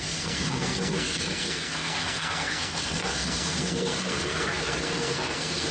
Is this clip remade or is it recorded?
remade